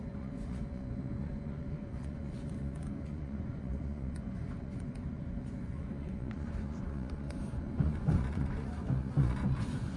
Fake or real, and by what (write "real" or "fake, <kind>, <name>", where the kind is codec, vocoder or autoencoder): fake, vocoder, Vocos